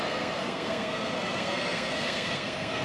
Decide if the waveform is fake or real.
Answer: fake